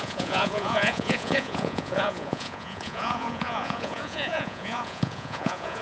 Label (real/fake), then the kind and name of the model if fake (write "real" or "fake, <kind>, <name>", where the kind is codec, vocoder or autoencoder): fake, vocoder, Vocos